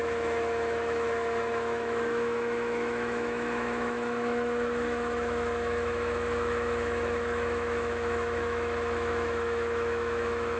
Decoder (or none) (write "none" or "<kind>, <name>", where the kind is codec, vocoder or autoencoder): autoencoder, DAC-VAE